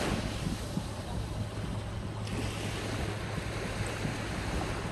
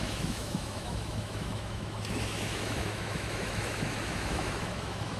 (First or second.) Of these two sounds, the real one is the first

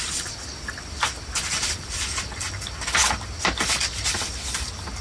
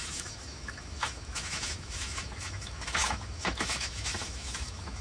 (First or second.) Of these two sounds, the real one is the first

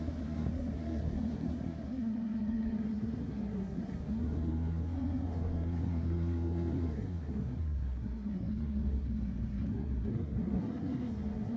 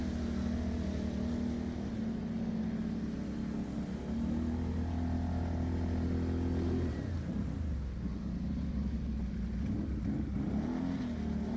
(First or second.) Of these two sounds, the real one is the second